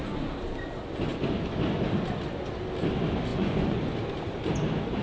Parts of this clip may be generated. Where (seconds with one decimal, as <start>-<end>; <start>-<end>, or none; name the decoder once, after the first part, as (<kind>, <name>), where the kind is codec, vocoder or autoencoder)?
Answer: 3.3-3.8 (vocoder, Vocos)